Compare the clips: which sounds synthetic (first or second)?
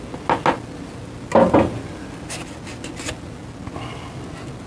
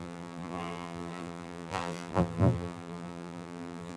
second